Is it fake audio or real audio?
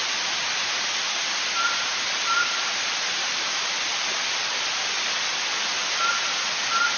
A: real